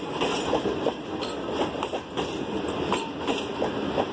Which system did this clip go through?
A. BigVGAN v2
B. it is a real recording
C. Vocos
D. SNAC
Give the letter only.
B